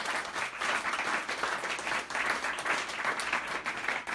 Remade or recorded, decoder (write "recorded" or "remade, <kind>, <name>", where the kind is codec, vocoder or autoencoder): recorded